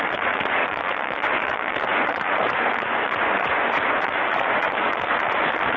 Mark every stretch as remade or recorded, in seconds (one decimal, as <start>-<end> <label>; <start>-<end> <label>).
0.0-5.8 remade

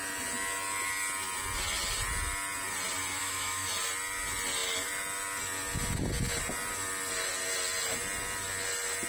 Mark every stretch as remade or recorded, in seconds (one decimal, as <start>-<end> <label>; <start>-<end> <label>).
0.0-3.2 recorded; 3.2-3.7 remade; 3.7-9.1 recorded